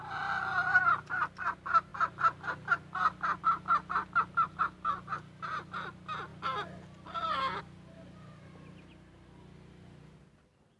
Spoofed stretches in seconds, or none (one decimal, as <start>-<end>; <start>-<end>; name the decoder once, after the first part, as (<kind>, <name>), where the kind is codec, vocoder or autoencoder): none